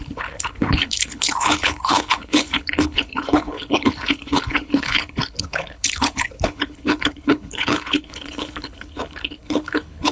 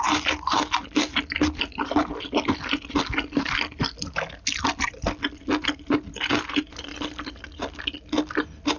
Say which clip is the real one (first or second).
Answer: second